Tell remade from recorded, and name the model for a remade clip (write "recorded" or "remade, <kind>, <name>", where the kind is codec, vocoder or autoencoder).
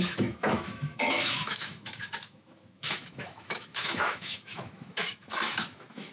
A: remade, autoencoder, DAC-VAE